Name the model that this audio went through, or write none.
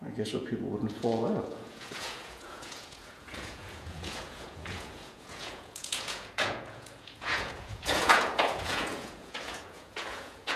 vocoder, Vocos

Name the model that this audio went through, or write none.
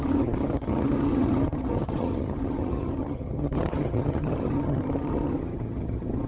vocoder, HiFi-GAN